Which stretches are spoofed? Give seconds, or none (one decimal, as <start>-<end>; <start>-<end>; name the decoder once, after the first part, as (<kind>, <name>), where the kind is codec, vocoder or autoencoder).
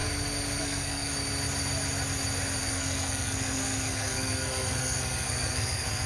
0.6-1.1 (codec, SNAC); 2.6-6.1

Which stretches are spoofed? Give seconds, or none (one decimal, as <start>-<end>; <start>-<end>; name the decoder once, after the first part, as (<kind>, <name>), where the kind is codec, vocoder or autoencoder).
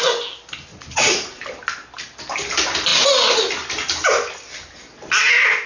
0.7-1.4 (vocoder, Vocos)